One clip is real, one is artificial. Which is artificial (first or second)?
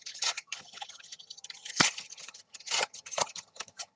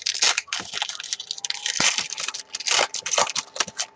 first